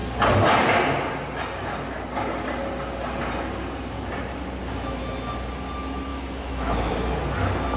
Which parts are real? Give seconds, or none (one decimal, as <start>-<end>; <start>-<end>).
0.0-6.1; 6.9-7.8